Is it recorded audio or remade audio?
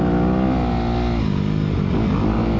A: recorded